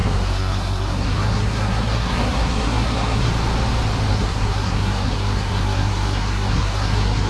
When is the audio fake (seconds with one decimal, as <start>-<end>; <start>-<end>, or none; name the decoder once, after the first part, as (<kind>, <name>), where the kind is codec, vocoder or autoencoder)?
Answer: 0.0-3.3 (codec, SNAC); 4.1-7.3